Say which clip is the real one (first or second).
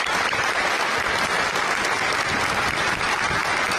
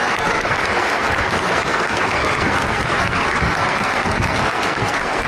first